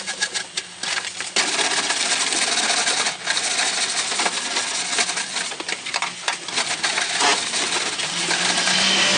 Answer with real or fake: real